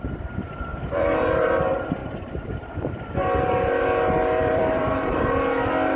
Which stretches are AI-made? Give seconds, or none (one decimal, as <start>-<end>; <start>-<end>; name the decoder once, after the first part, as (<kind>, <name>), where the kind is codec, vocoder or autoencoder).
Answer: 0.7-1.6 (vocoder, BigVGAN v2); 2.0-2.9; 4.4-5.2